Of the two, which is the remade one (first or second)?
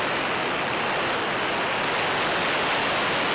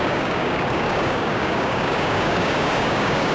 second